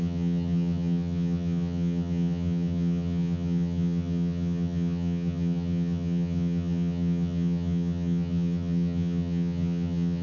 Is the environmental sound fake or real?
fake